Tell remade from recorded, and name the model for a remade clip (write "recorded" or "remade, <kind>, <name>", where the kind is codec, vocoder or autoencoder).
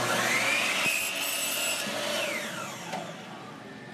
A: recorded